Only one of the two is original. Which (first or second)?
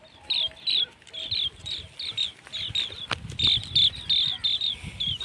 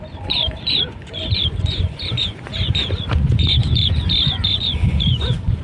first